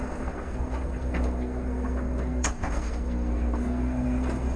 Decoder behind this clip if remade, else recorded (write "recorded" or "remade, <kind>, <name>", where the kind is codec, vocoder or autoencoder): remade, codec, SNAC